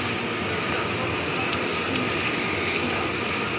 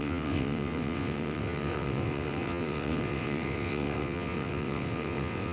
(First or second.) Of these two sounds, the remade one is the second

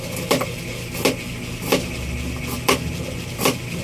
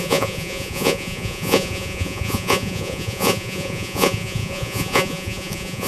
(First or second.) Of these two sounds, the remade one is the second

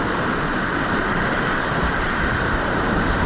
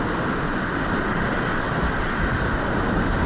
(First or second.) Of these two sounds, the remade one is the first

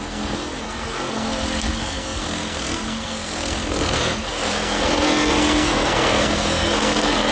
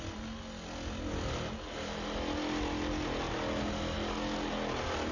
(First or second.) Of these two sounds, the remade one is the first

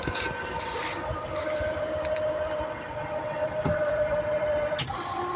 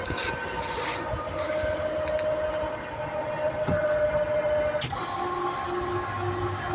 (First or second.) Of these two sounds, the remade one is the first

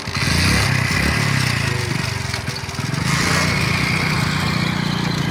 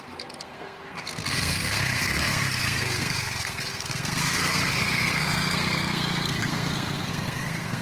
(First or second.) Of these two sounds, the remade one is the second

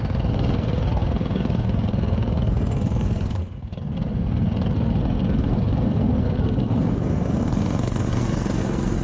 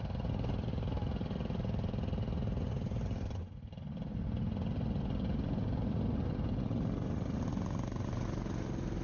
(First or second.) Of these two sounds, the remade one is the first